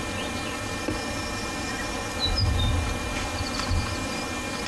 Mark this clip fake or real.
real